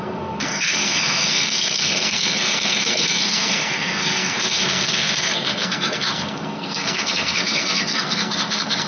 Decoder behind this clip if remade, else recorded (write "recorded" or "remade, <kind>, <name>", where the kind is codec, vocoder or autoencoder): remade, codec, SNAC